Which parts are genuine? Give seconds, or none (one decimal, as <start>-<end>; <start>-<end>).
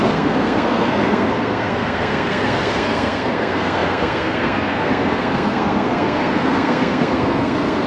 none